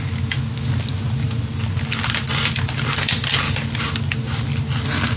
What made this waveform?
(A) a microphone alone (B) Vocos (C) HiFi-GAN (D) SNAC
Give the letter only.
A